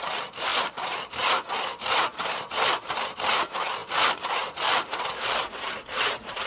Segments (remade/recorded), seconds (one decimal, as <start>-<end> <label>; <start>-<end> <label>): 0.0-2.1 remade; 2.1-2.9 recorded; 2.9-6.5 remade

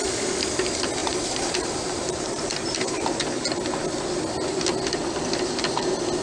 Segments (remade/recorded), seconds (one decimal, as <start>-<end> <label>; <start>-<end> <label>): 0.0-1.0 recorded; 1.0-3.2 remade; 3.2-6.2 recorded

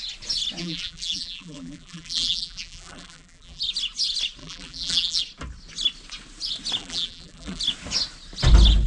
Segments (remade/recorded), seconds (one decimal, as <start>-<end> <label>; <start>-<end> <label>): 0.0-0.6 recorded; 0.6-3.6 remade; 3.6-4.4 recorded; 4.4-5.2 remade; 5.2-6.8 recorded; 6.8-7.6 remade; 7.6-8.9 recorded